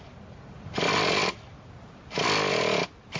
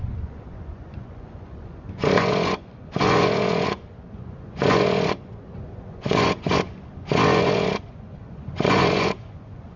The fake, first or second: second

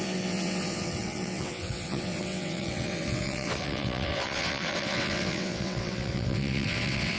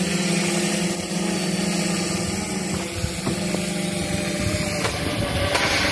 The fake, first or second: first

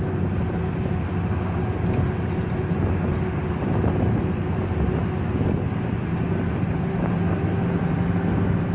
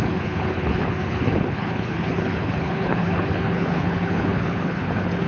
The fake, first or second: second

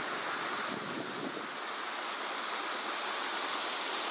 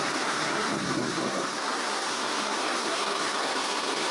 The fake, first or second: second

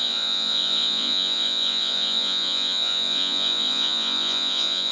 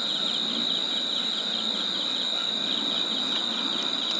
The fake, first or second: first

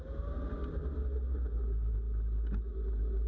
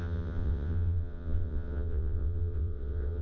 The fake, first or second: second